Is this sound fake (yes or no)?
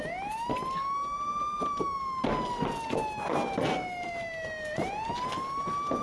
no